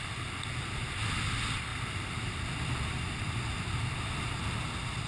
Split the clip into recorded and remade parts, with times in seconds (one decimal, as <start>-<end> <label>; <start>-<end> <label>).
0.0-1.7 recorded; 1.7-4.3 remade; 4.3-5.1 recorded

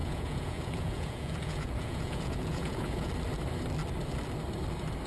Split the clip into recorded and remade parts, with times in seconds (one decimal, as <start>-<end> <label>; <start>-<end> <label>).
0.0-3.1 remade; 3.1-5.1 recorded

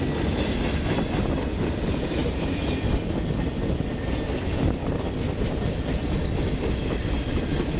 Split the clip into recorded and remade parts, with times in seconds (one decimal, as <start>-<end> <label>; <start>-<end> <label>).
0.0-7.8 recorded